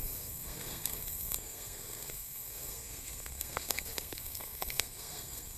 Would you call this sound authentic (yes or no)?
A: no